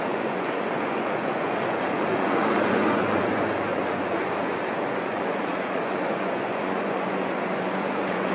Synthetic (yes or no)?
yes